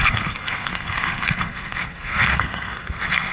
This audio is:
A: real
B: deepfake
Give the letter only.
B